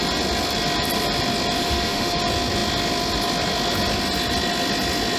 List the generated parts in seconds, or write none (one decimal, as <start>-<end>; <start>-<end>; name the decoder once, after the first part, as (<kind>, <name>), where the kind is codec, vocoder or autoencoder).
1.6-2.2 (autoencoder, DAC-VAE)